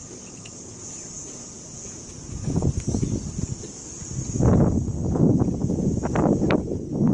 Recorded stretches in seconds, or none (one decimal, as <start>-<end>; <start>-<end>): 2.7-7.1